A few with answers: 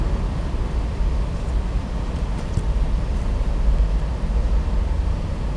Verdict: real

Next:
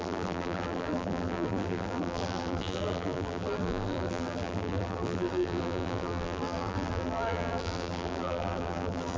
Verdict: fake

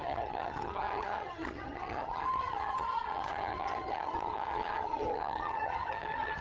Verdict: fake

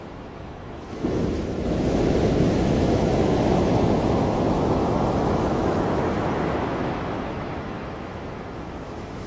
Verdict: fake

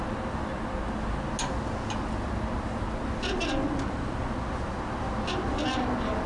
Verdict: real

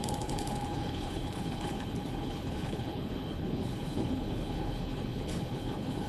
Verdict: fake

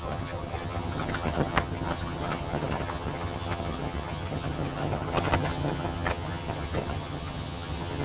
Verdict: fake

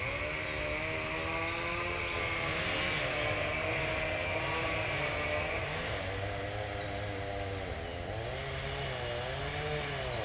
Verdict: real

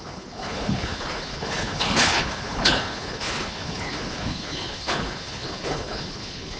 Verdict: fake